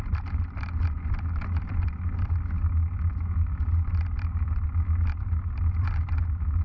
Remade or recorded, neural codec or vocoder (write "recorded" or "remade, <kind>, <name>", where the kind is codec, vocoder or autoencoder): recorded